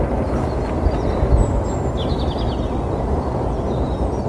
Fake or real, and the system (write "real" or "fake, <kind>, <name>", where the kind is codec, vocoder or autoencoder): real